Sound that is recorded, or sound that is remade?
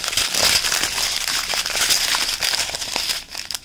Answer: recorded